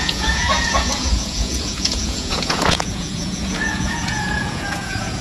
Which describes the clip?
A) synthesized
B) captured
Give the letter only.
A